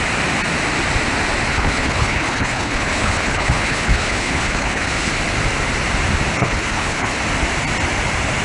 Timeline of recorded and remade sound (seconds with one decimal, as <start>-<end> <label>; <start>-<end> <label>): 0.0-1.5 recorded; 1.5-5.1 remade; 5.1-6.4 recorded; 6.4-7.2 remade; 7.2-8.4 recorded